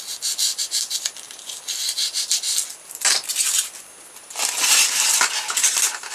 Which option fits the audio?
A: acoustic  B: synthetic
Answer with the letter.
A